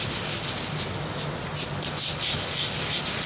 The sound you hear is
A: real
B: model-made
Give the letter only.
A